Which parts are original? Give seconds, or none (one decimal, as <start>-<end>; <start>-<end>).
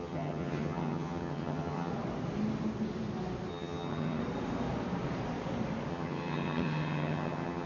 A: 1.9-3.5; 4.2-5.9